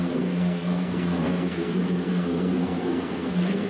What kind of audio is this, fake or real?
fake